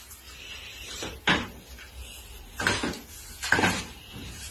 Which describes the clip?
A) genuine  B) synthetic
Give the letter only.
A